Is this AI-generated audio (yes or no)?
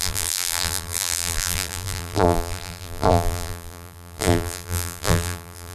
yes